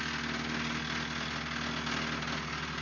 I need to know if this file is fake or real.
real